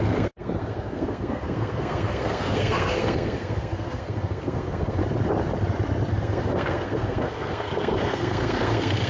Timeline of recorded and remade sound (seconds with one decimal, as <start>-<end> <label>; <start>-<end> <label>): 0.0-5.0 remade; 5.0-6.1 recorded; 6.1-9.1 remade